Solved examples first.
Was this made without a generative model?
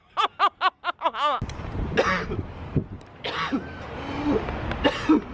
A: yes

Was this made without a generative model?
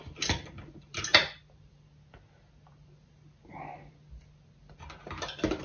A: yes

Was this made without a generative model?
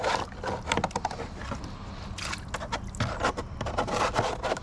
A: yes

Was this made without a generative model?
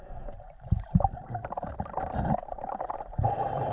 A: no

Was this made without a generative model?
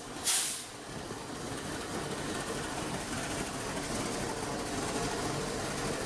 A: yes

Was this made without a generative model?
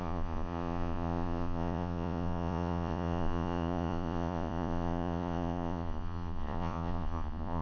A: no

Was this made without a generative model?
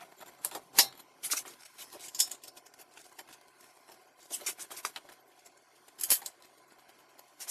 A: yes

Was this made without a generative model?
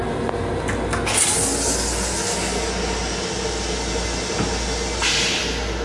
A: yes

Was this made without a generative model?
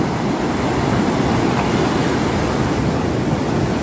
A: yes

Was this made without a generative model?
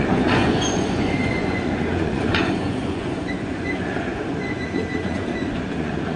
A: no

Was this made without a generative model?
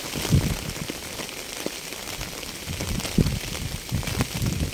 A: yes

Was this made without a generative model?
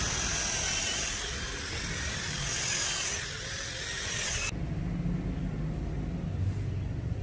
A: yes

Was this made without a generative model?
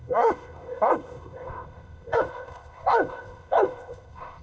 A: no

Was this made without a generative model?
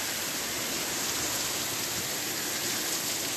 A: yes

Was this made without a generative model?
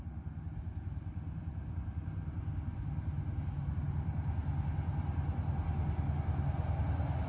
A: yes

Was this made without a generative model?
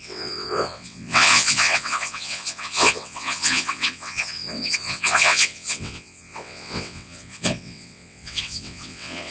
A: no